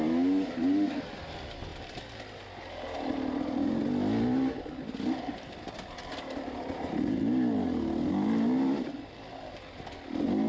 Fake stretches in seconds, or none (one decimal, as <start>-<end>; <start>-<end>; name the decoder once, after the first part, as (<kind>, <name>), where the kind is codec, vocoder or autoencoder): none

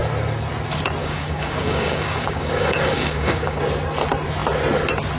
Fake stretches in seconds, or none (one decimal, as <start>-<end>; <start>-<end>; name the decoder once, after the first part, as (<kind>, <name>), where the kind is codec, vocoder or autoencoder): 1.0-3.6 (codec, DAC)